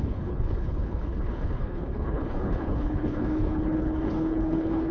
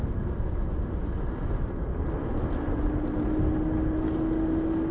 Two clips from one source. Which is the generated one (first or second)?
first